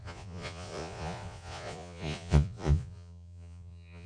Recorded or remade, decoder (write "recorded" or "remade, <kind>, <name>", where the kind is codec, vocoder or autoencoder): remade, vocoder, Vocos